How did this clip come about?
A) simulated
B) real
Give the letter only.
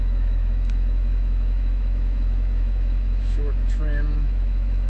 A